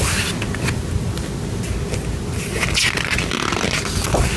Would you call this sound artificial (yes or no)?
no